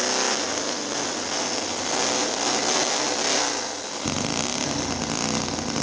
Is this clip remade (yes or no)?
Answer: no